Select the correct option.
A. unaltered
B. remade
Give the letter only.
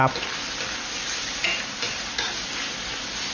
A